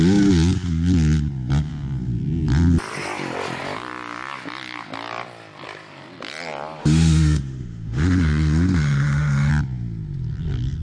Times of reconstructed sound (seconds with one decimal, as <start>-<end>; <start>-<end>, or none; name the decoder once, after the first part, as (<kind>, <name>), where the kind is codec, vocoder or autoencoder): 6.8-9.5 (autoencoder, DAC-VAE)